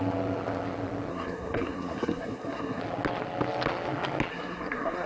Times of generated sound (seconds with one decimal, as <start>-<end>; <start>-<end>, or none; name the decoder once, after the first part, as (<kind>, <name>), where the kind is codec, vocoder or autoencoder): 1.1-2.8 (codec, SNAC); 4.3-5.1